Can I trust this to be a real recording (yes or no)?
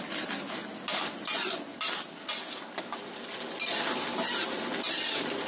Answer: yes